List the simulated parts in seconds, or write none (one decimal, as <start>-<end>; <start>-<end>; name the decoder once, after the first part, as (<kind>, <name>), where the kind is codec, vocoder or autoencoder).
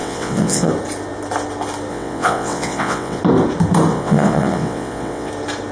0.0-0.7 (vocoder, WaveNeXt); 1.9-3.2; 3.9-5.3